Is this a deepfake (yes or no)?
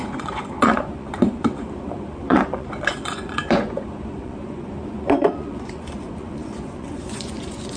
yes